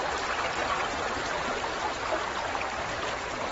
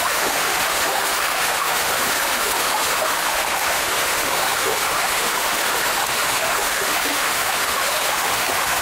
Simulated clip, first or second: second